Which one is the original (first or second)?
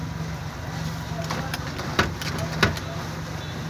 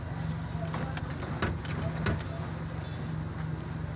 second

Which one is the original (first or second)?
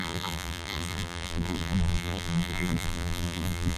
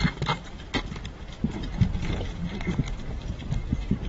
second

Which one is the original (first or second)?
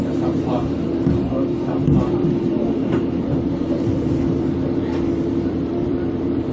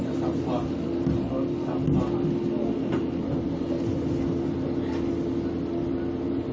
second